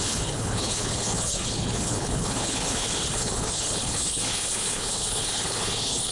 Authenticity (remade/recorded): remade